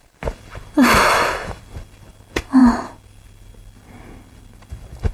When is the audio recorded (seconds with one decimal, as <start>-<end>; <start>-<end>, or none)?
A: 0.0-0.9; 1.6-5.1